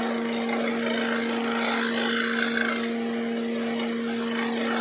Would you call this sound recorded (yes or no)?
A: yes